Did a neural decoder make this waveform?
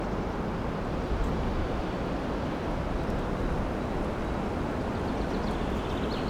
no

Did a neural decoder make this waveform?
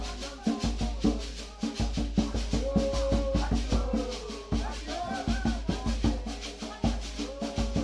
no